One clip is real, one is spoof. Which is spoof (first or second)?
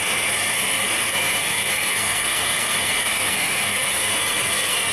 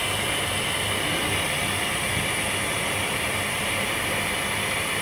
first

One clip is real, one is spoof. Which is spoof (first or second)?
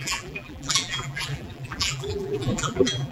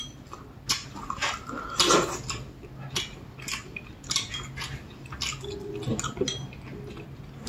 first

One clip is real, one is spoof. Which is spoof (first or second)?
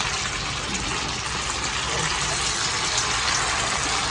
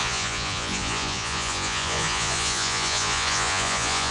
second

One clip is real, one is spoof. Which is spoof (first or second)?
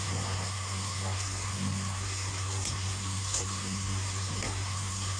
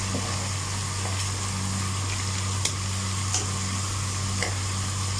first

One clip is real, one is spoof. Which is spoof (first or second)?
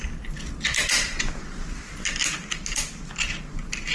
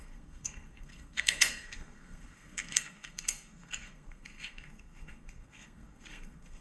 second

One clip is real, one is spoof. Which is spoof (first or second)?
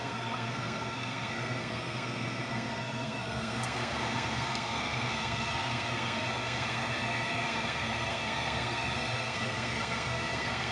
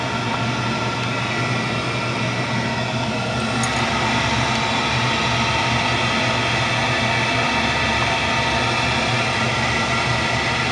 first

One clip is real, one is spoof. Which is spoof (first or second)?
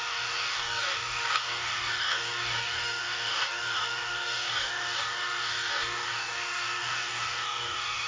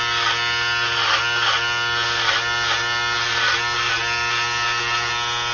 first